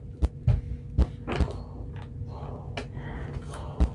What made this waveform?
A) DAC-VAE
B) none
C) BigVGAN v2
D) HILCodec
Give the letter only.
B